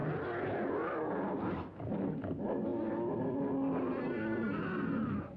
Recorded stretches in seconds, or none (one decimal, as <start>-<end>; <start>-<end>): 0.0-5.4